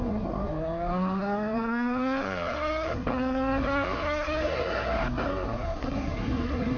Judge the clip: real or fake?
fake